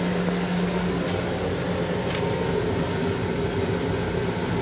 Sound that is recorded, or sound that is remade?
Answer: recorded